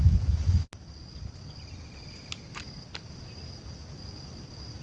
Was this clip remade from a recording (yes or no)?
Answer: no